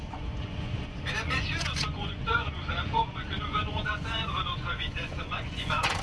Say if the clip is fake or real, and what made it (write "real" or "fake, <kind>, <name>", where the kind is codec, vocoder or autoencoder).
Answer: fake, vocoder, Vocos